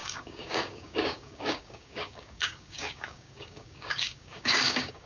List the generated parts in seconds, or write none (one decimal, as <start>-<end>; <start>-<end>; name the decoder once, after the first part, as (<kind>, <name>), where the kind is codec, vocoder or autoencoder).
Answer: 0.0-5.1 (codec, DAC)